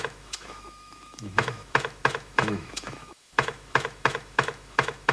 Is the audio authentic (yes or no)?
no